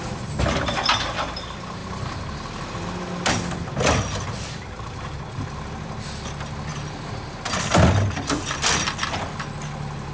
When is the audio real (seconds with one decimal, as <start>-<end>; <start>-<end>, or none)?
0.0-10.1